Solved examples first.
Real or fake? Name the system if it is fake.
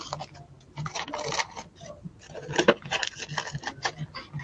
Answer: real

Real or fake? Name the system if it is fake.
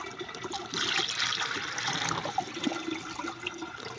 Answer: real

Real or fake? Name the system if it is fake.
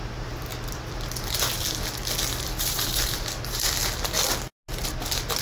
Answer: real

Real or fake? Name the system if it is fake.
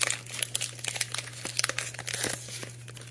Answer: real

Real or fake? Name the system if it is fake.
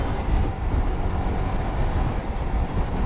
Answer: fake, vocoder, BigVGAN v2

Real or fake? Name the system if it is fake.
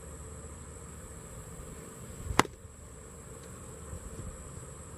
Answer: fake, vocoder, BigVGAN v2